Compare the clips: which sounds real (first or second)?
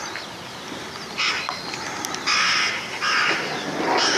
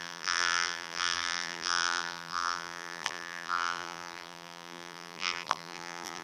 first